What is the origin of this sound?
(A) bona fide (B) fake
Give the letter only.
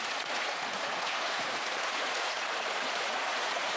B